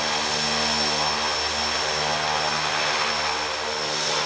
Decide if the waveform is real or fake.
real